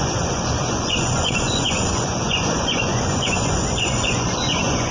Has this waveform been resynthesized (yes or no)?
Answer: yes